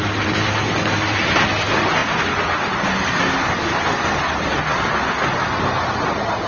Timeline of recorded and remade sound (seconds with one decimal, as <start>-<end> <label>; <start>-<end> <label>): 0.0-6.5 recorded